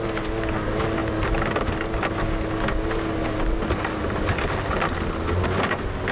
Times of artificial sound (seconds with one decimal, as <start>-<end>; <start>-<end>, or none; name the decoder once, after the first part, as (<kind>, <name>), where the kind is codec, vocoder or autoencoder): none